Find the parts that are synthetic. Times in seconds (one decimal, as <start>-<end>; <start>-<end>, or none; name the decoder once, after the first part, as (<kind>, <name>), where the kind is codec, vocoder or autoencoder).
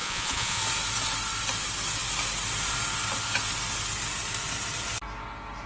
0.0-0.6 (vocoder, Vocos)